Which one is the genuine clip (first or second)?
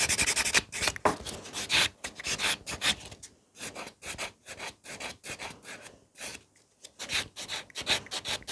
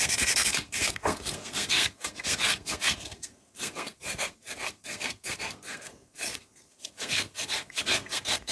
first